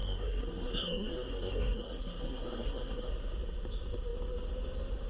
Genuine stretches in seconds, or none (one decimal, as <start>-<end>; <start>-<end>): 3.1-5.1